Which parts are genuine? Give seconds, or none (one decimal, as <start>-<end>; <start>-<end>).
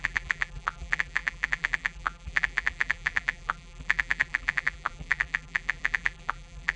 none